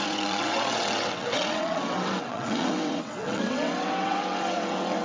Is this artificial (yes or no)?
yes